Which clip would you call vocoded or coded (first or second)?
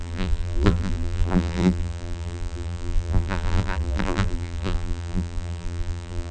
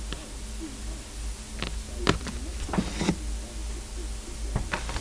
first